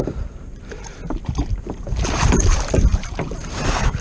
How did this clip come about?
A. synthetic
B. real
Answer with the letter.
A